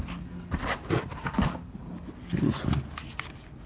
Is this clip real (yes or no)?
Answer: yes